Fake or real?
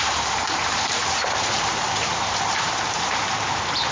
fake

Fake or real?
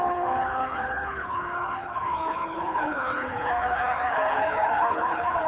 fake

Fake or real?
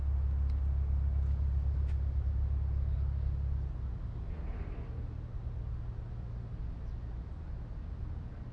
real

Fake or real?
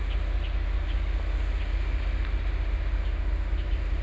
real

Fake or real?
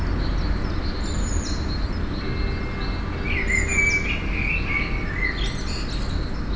real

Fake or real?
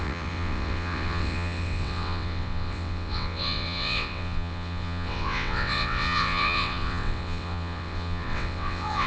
fake